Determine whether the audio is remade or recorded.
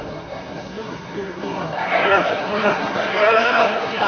remade